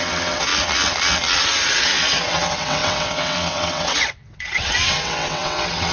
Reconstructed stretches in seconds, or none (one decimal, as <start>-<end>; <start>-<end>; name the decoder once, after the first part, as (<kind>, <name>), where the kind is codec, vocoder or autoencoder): 0.0-0.5 (vocoder, WaveNeXt); 1.4-5.9